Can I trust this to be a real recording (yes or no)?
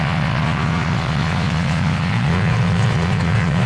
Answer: no